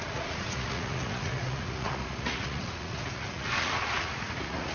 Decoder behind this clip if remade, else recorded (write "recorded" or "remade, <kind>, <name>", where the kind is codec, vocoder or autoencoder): remade, vocoder, Vocos